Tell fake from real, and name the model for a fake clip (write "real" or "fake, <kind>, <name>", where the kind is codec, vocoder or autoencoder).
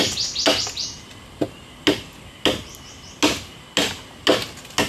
real